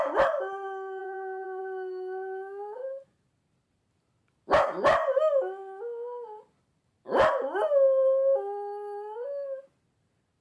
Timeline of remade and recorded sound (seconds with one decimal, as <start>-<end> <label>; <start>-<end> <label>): 0.0-1.0 recorded; 1.0-1.6 remade; 1.6-10.4 recorded